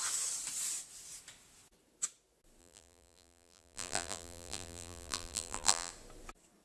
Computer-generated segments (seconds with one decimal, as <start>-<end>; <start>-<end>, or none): 2.6-5.9